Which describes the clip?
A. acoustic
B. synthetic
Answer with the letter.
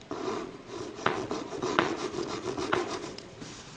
B